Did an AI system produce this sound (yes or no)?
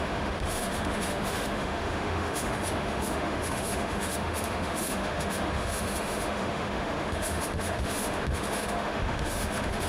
yes